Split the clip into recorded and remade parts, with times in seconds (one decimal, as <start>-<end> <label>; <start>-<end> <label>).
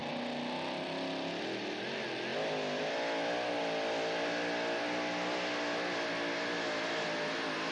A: 0.0-7.7 recorded